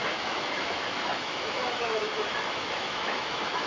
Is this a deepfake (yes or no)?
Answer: yes